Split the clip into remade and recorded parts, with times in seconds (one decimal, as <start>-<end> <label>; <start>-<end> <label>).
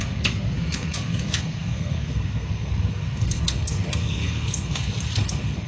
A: 0.0-5.7 remade